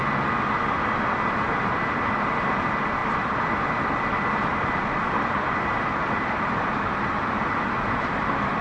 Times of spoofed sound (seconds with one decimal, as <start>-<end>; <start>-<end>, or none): 4.5-7.1